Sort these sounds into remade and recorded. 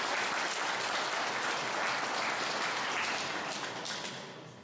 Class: recorded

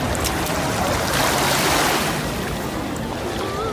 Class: recorded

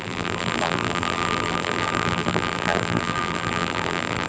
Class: remade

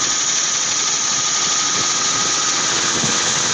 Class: remade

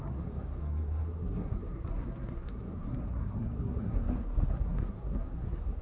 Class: remade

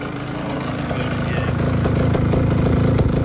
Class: recorded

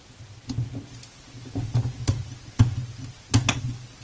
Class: recorded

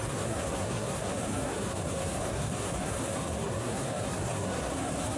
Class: remade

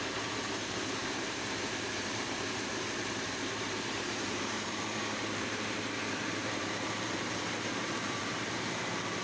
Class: remade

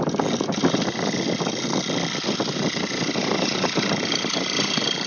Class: recorded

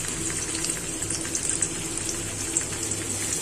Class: recorded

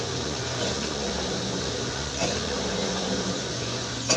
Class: remade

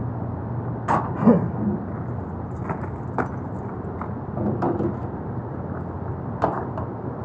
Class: recorded